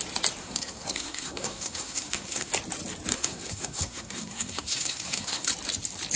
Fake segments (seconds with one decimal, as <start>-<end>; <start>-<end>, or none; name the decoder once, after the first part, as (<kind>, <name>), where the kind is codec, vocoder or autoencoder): 0.4-2.5 (codec, SNAC); 3.1-5.5